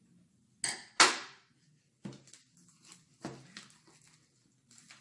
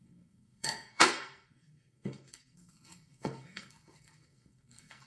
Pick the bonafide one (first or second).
first